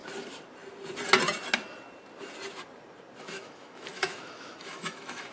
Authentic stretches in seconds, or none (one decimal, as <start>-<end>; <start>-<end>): 0.0-3.2